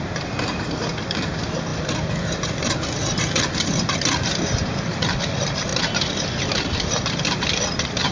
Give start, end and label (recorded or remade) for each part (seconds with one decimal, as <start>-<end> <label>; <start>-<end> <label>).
0.0-8.1 remade